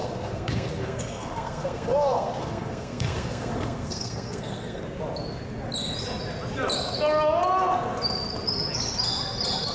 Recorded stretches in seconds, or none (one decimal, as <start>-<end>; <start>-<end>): 4.8-9.7